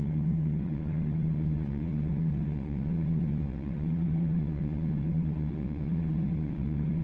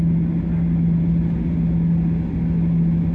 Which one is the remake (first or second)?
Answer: first